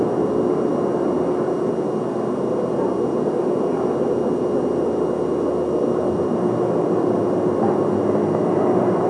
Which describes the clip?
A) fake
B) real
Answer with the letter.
B